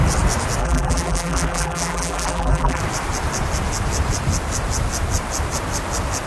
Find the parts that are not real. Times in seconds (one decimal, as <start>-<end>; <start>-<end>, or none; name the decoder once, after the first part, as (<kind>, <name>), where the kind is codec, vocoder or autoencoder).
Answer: 0.6-2.8 (vocoder, BigVGAN v2)